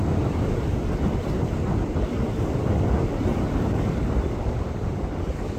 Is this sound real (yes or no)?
no